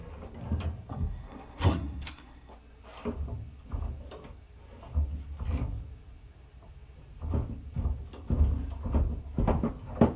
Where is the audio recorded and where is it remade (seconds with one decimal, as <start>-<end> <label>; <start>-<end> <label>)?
0.0-0.9 recorded; 0.9-2.5 remade; 2.5-10.2 recorded